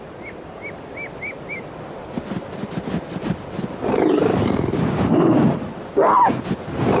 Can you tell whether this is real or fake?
real